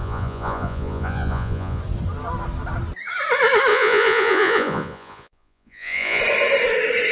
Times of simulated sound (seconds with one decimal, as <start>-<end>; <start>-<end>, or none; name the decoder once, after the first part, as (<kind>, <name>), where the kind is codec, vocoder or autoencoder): 0.0-1.8 (vocoder, Vocos); 3.7-6.2